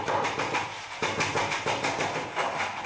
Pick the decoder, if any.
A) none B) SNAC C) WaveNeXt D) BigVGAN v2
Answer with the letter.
A